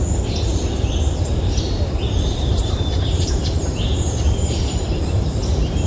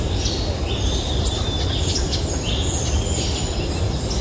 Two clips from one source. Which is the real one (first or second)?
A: second